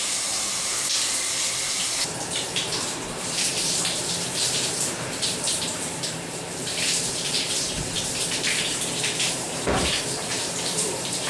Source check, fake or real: fake